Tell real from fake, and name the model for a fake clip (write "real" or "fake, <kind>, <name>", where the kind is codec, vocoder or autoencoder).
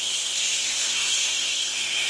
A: fake, codec, SNAC